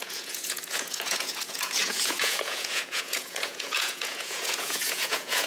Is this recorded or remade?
remade